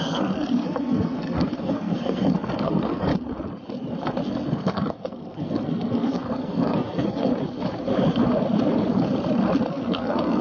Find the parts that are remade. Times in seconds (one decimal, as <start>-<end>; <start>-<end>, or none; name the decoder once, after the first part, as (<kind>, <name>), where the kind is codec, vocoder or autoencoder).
0.0-3.1 (codec, SNAC); 4.3-7.3; 9.7-10.4